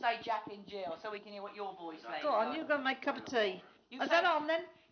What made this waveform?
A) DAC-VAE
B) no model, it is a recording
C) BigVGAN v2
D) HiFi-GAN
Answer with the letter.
B